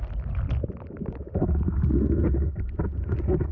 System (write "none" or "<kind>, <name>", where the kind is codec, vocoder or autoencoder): none